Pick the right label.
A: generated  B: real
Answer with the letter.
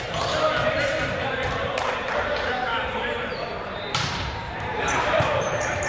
A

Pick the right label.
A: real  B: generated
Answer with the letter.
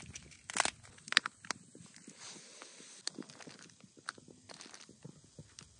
A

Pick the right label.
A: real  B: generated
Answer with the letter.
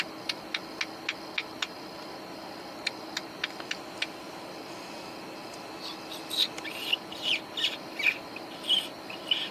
A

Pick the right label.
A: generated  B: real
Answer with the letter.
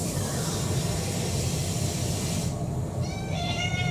A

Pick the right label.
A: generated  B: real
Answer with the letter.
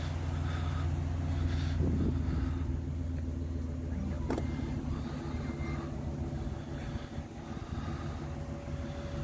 B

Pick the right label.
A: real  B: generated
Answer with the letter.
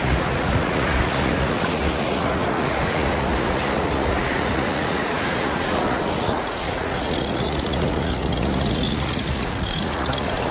B